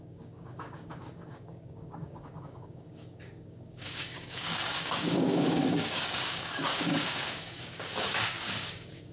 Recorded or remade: remade